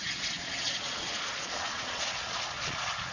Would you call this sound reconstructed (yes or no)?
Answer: yes